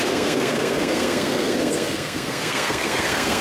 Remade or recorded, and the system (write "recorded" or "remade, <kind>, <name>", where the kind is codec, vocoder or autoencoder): remade, codec, SNAC